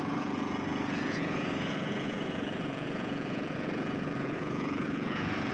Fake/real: fake